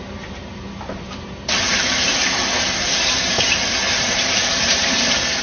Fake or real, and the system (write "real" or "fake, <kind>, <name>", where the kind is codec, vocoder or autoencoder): fake, vocoder, BigVGAN v2